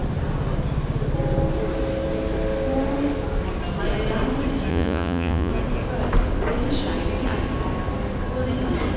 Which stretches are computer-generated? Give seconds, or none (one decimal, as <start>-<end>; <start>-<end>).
4.7-5.5